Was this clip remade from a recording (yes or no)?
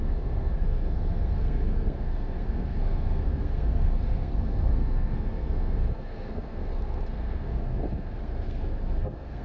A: yes